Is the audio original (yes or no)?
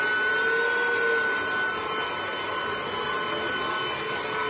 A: yes